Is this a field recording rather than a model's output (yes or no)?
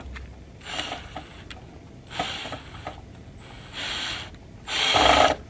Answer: yes